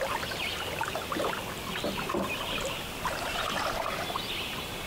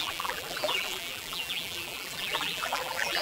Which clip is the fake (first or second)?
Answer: second